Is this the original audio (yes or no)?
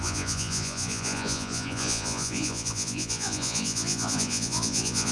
no